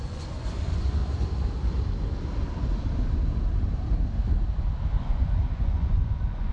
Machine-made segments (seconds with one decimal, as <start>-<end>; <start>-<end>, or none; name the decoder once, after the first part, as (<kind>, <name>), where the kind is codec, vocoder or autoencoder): 0.0-1.0 (vocoder, Vocos); 4.9-6.5